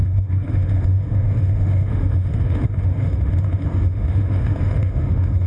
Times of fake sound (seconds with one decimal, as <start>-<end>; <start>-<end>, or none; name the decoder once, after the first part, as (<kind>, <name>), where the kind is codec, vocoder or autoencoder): 0.0-5.5 (autoencoder, DAC-VAE)